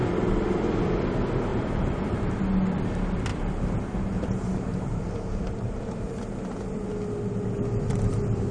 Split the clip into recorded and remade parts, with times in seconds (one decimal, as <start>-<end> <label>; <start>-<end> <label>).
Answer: 0.0-1.5 recorded; 1.5-2.3 remade; 2.3-3.3 recorded; 3.3-6.2 remade; 6.2-8.5 recorded